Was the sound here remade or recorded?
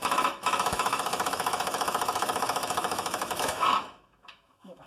remade